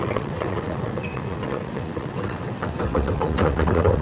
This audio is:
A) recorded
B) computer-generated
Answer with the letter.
B